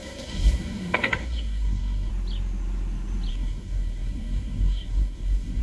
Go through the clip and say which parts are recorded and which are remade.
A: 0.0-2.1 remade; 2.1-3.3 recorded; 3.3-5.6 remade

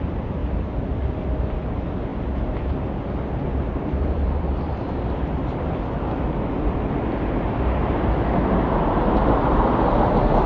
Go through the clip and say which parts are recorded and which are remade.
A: 0.0-10.5 recorded

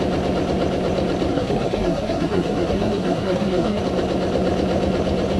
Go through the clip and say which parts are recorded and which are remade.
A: 0.0-1.3 recorded; 1.3-3.8 remade; 3.8-5.4 recorded

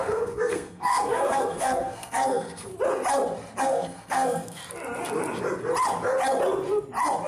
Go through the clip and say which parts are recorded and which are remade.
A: 0.0-2.7 remade; 2.7-3.6 recorded; 3.6-4.6 remade; 4.6-7.3 recorded

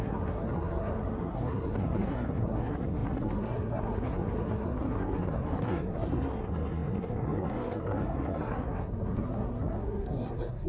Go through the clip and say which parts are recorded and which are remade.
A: 0.0-10.7 remade

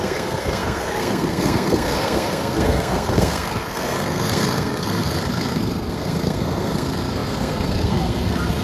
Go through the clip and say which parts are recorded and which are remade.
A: 0.0-8.6 remade